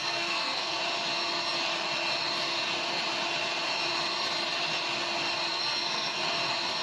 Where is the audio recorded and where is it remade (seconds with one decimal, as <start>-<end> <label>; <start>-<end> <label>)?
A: 0.0-0.8 remade; 0.8-5.5 recorded; 5.5-6.2 remade; 6.2-6.8 recorded